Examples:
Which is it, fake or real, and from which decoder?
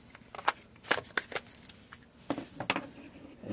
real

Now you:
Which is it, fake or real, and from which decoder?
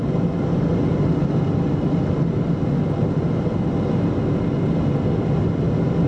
real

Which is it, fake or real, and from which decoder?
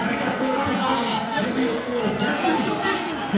fake, codec, SNAC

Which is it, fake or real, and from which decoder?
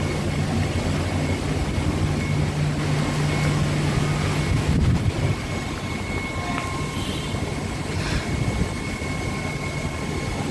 real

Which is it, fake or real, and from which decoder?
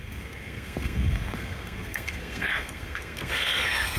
fake, codec, SNAC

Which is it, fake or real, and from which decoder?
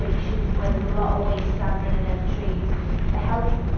real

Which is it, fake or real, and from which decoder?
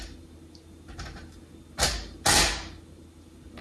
real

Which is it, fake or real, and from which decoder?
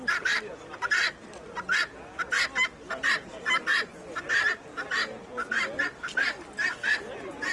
real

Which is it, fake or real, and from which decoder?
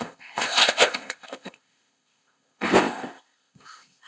fake, codec, ZipCodec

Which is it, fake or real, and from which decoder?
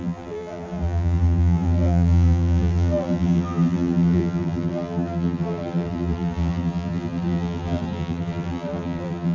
fake, vocoder, BigVGAN v2